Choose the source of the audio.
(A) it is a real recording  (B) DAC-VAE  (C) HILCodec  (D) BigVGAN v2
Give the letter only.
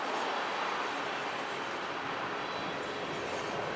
A